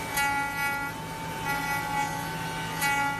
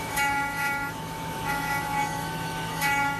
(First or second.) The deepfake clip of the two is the second